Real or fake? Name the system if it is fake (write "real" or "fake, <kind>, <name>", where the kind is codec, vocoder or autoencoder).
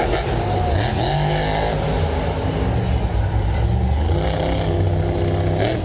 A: real